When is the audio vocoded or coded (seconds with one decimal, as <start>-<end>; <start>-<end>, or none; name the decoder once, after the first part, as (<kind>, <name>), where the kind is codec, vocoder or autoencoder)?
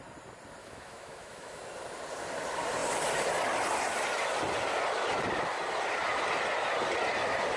0.6-1.6 (autoencoder, DAC-VAE)